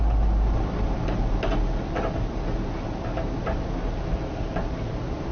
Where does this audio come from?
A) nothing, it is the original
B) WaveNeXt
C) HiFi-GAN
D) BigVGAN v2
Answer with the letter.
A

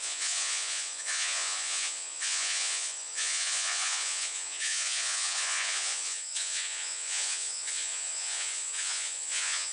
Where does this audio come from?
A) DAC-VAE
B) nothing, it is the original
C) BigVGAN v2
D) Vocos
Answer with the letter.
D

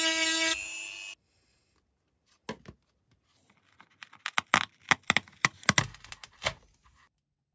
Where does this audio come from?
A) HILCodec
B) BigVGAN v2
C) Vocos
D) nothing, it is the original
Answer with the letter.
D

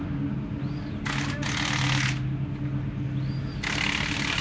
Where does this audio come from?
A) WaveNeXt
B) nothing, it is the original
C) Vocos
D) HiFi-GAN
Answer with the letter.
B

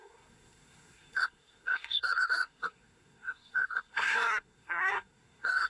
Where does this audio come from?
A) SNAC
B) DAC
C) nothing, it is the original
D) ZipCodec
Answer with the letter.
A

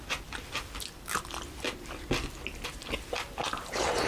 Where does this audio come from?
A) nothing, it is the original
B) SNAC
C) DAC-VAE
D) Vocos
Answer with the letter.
A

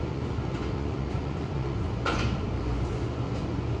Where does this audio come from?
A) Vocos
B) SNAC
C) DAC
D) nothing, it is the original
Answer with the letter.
A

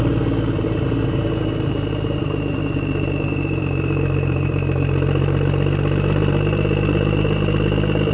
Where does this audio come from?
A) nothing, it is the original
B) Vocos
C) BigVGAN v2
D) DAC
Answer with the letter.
C